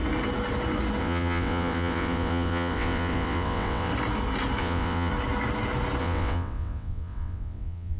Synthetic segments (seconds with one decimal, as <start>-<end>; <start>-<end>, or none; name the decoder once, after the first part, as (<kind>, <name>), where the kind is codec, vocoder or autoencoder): 1.0-3.9 (vocoder, WaveNeXt); 4.6-5.1; 6.0-8.0

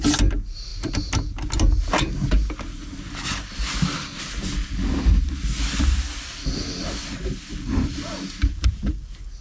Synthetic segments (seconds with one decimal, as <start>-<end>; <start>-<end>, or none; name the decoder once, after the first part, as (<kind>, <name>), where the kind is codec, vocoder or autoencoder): none

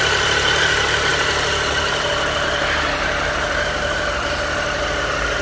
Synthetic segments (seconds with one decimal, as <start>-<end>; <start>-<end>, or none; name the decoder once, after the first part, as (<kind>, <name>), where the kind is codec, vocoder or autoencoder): none

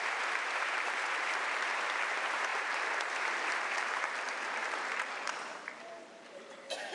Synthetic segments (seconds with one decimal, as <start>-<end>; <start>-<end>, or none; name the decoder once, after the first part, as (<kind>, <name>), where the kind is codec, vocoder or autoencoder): 0.0-6.9 (vocoder, BigVGAN v2)

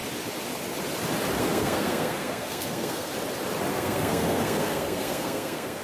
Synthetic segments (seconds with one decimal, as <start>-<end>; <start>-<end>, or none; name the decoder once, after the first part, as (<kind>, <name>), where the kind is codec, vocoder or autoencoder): 1.4-3.1 (codec, SNAC); 3.7-5.8